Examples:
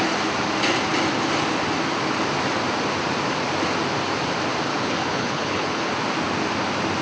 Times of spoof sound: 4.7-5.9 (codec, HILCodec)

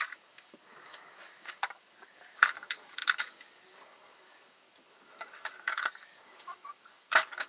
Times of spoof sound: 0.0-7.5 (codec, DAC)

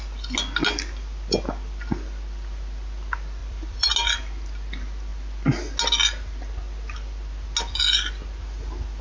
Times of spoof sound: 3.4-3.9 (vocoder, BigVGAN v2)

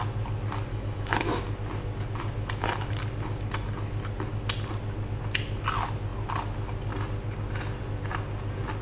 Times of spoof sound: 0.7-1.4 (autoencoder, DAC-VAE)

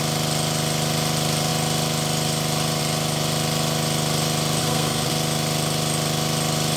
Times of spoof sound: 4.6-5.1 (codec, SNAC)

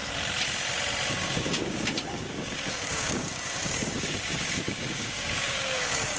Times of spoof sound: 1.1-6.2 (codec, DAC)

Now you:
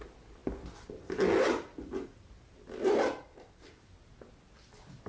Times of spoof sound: none

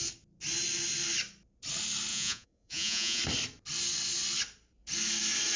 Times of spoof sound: 2.1-3.2 (vocoder, Vocos)